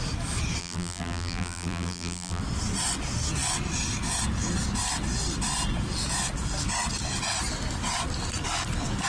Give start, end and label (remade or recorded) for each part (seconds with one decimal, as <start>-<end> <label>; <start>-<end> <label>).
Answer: 0.0-0.6 recorded; 0.6-2.4 remade; 2.4-9.1 recorded